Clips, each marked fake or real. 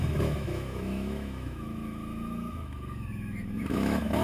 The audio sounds fake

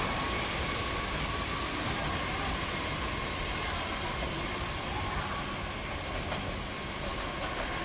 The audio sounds real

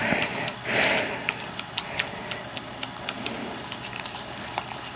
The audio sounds real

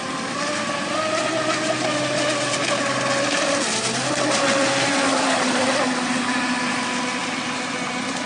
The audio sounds real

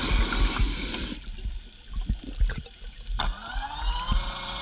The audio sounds real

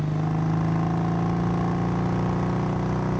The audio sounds real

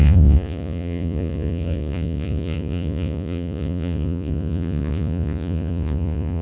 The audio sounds fake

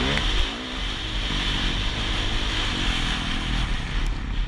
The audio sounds real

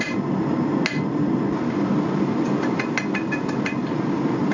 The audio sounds real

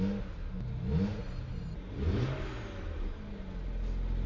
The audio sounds real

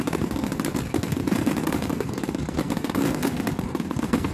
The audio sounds fake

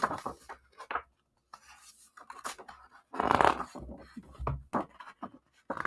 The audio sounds real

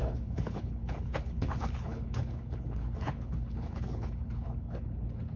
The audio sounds fake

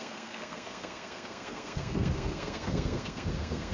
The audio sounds fake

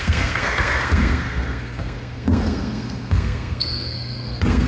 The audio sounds fake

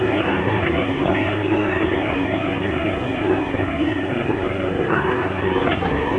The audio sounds fake